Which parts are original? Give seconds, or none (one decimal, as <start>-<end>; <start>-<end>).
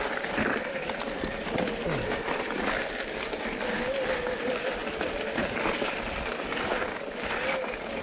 0.0-8.0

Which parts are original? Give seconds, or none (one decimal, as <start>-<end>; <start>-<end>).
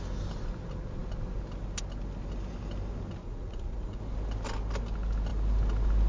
0.0-3.2; 4.0-6.1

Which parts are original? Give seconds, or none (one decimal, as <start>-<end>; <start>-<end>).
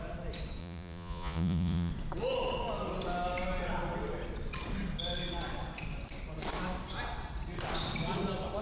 0.0-0.6; 1.9-8.6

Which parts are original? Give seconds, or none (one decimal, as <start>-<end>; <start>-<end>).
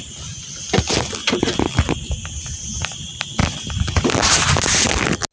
0.0-5.3